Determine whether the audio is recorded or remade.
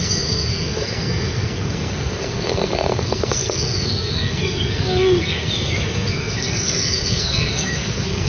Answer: remade